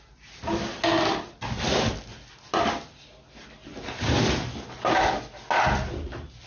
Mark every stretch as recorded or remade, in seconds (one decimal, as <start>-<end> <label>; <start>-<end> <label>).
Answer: 0.0-6.5 recorded